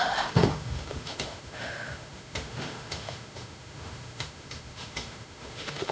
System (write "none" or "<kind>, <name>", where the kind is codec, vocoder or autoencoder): autoencoder, DAC-VAE